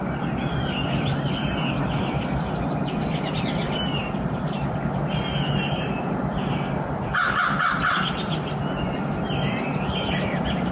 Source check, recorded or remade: recorded